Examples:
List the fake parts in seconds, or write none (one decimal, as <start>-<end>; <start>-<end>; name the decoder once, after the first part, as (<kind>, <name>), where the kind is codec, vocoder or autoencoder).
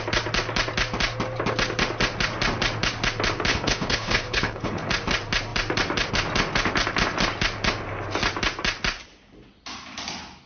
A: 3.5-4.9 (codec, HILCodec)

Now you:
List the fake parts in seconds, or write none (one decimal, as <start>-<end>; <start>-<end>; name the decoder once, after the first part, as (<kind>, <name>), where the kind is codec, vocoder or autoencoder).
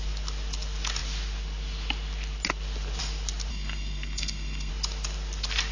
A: 3.5-4.7 (codec, SNAC)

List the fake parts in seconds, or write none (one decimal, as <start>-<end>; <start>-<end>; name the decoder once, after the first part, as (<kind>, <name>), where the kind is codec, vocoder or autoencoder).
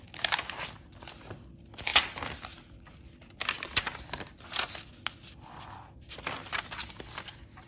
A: none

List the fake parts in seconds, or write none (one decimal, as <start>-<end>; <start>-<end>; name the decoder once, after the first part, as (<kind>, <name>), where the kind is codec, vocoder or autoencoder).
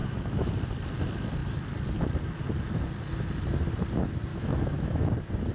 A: 0.0-0.5 (autoencoder, DAC-VAE); 4.3-5.1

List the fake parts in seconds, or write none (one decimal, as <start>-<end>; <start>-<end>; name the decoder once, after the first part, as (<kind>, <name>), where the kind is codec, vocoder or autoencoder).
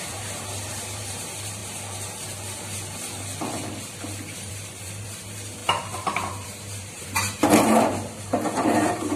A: 0.0-1.6 (vocoder, BigVGAN v2); 4.5-9.2